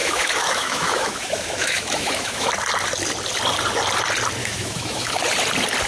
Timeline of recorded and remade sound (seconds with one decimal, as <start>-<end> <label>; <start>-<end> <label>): 0.0-2.5 remade; 2.5-4.4 recorded; 4.4-5.2 remade; 5.2-5.9 recorded